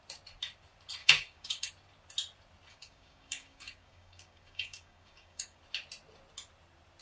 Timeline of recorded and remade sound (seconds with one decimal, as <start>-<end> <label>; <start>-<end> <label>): 0.0-1.0 recorded; 1.0-1.7 remade; 1.7-2.7 recorded; 2.7-5.6 remade; 5.6-7.0 recorded